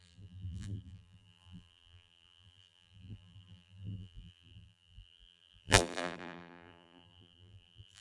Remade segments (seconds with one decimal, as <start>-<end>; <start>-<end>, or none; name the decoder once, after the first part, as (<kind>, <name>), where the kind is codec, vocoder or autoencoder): 0.0-8.0 (vocoder, BigVGAN v2)